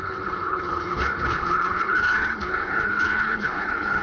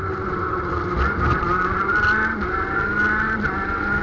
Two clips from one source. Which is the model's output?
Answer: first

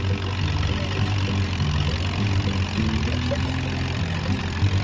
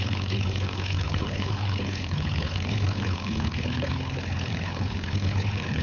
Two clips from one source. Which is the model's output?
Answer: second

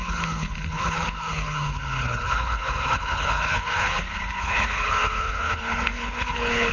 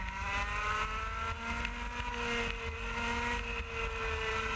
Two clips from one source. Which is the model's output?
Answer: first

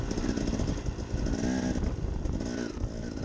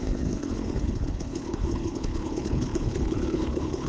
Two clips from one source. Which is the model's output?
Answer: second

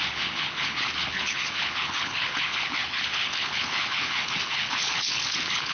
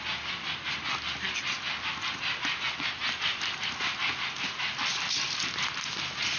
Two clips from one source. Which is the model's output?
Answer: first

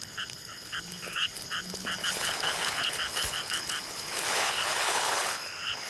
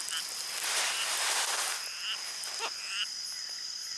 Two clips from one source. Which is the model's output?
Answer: first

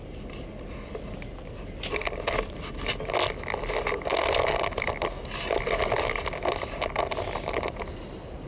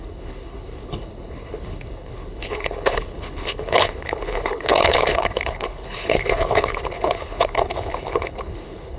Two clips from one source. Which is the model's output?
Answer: second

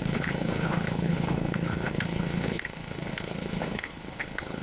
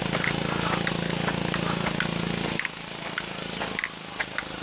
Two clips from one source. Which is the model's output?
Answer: first